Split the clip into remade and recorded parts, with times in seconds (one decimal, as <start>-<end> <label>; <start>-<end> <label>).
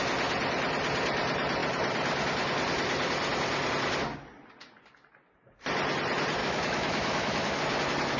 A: 0.0-6.4 recorded; 6.4-7.6 remade; 7.6-8.2 recorded